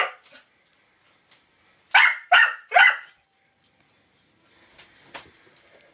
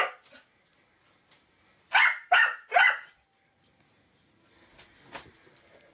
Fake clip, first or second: first